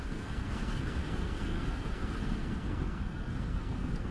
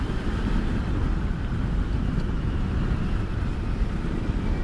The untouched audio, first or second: second